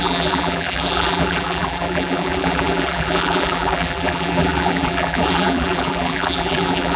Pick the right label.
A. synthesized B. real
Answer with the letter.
A